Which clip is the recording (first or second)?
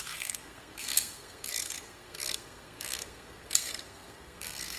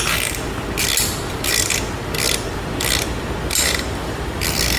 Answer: second